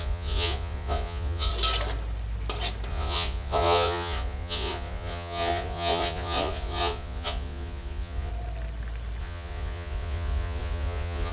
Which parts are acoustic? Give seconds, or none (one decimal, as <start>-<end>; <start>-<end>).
1.5-2.9; 8.3-9.2